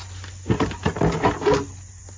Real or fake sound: real